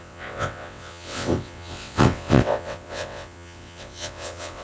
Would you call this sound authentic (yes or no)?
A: no